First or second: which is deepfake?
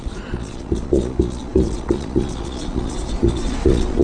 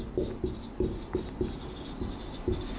first